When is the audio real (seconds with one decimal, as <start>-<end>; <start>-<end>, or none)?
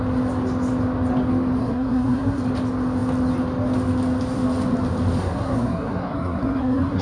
0.0-1.6; 2.4-5.2